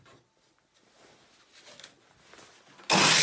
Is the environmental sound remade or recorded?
recorded